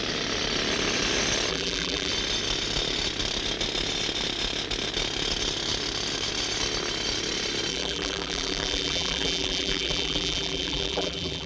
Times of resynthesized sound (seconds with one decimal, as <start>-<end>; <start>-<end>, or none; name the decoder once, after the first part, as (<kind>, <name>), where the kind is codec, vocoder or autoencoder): 1.5-2.1 (vocoder, BigVGAN v2); 7.7-11.5